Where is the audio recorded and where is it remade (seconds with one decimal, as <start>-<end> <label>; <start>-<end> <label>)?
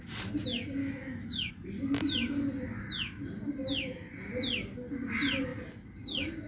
0.0-0.8 recorded; 0.8-1.5 remade; 1.5-6.5 recorded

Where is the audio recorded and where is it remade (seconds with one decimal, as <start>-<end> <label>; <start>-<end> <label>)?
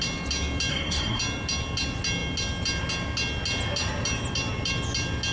0.0-0.7 recorded; 0.7-1.2 remade; 1.2-5.3 recorded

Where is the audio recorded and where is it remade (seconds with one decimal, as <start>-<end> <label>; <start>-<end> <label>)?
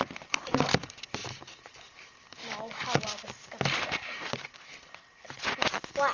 0.0-6.1 recorded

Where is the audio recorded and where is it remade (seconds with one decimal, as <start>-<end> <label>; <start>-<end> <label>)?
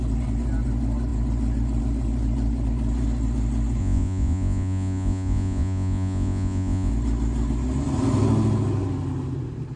0.0-3.8 recorded; 3.8-6.9 remade; 6.9-9.8 recorded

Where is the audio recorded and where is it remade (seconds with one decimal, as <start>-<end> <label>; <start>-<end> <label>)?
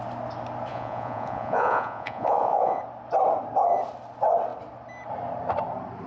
0.0-0.7 recorded; 0.7-2.8 remade; 2.8-6.1 recorded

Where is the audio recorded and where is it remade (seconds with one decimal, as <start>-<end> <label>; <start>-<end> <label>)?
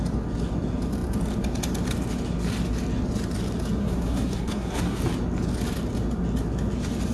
0.0-3.8 recorded; 3.8-5.0 remade; 5.0-7.1 recorded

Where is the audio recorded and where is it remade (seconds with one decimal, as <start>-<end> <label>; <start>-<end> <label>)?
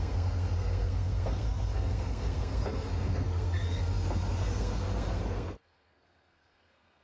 0.0-7.0 remade